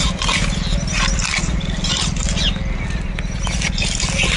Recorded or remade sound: recorded